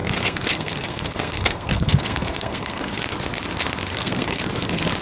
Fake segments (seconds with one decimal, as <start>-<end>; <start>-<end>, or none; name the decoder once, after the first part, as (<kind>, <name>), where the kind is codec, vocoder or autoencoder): 0.0-3.0 (codec, SNAC); 3.9-4.4